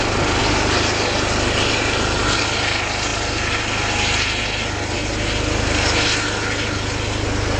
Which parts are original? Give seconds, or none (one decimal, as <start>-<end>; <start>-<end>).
0.0-7.6